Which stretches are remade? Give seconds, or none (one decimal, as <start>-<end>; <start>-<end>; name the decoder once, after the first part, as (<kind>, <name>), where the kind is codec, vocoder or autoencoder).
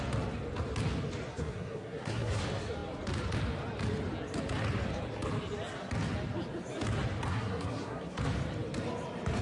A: 1.3-2.4 (codec, SNAC); 7.3-8.2